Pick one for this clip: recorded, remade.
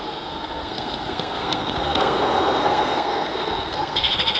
remade